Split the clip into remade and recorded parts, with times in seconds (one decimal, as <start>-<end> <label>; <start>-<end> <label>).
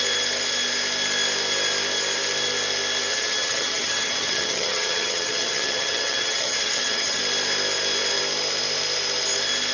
0.0-3.1 recorded; 3.1-7.2 remade; 7.2-9.7 recorded